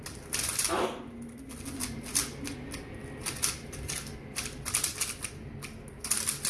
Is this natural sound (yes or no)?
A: yes